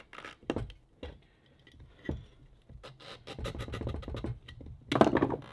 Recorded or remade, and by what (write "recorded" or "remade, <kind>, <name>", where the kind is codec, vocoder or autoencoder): recorded